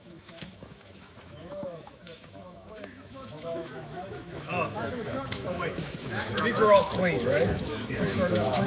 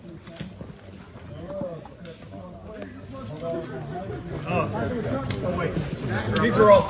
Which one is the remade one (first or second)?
first